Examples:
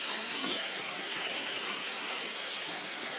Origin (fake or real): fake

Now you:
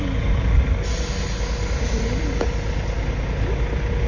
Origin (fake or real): real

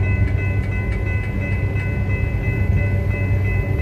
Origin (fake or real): real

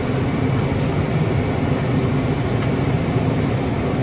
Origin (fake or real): real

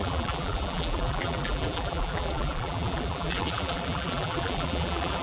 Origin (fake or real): fake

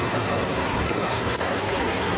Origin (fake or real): fake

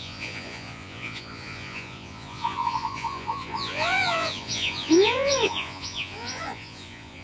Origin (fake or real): fake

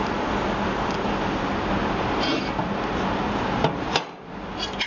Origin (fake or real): real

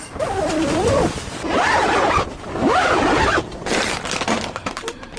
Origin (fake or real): fake